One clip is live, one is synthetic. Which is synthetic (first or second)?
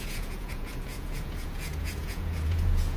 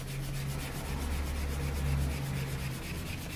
first